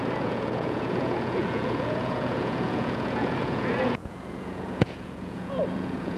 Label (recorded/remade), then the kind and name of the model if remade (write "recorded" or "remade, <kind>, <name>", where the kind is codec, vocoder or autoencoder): remade, vocoder, Vocos